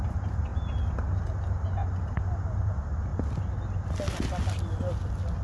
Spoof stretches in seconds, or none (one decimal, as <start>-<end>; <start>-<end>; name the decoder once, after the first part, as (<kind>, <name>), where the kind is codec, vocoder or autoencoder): 0.0-0.5 (vocoder, BigVGAN v2); 2.6-3.1